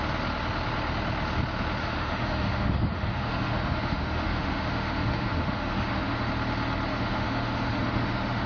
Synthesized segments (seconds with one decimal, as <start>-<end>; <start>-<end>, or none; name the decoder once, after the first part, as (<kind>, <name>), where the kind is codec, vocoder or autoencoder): 1.8-6.3 (autoencoder, DAC-VAE); 6.9-8.5